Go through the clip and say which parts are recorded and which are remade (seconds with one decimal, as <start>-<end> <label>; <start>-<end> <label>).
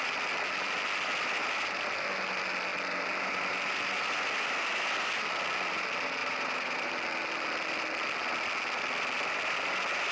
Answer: 0.0-6.2 recorded; 6.2-6.9 remade; 6.9-10.1 recorded